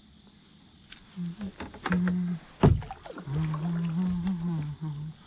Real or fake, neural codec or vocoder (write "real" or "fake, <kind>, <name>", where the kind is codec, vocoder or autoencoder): real